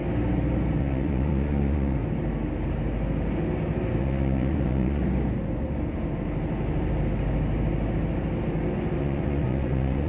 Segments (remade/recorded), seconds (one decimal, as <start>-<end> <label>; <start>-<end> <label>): 0.0-0.8 recorded; 0.8-2.0 remade; 2.0-4.0 recorded; 4.0-5.0 remade; 5.0-9.0 recorded; 9.0-10.1 remade